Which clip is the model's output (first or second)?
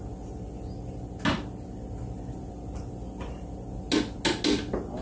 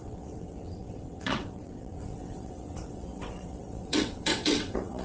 second